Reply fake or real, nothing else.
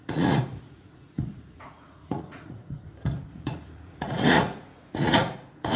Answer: fake